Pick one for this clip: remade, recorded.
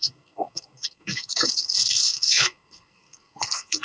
remade